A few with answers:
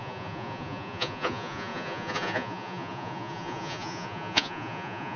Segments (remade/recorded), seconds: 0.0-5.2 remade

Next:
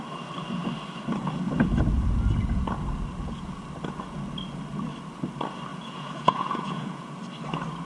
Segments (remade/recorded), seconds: 0.0-5.7 recorded; 5.7-7.1 remade; 7.1-7.8 recorded

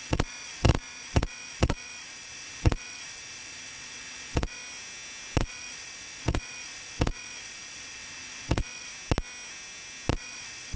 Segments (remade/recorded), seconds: 0.0-4.6 remade; 4.6-5.4 recorded; 5.4-8.9 remade; 8.9-10.1 recorded; 10.1-10.8 remade

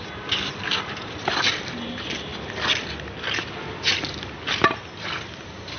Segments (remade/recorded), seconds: 0.0-5.8 recorded

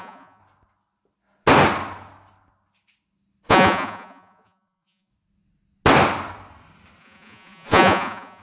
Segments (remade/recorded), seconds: 0.0-0.4 remade; 0.4-3.5 recorded; 3.5-5.1 remade; 5.1-7.0 recorded; 7.0-8.4 remade

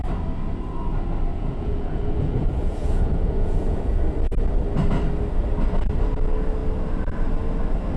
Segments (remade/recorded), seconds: 0.0-1.3 recorded; 1.3-4.0 remade; 4.0-8.0 recorded

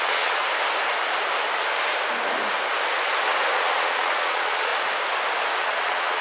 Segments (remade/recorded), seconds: 0.0-0.4 remade; 0.4-3.6 recorded; 3.6-4.7 remade; 4.7-5.6 recorded; 5.6-6.2 remade